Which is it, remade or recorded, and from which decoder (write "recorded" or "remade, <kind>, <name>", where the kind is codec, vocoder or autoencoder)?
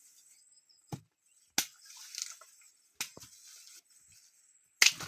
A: recorded